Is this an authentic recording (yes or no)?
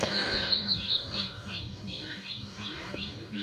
no